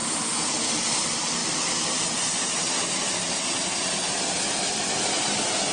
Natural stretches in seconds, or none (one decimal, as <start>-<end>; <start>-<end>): 0.7-5.7